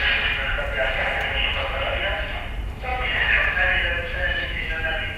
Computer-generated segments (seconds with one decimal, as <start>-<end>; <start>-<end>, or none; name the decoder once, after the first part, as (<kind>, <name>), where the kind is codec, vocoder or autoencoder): 2.9-5.2 (autoencoder, DAC-VAE)